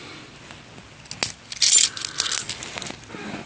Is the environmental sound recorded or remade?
recorded